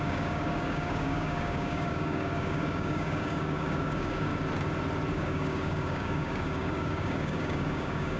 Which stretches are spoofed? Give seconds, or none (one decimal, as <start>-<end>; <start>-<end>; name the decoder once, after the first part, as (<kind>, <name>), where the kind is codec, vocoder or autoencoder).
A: 0.0-4.3 (codec, DAC); 5.1-8.2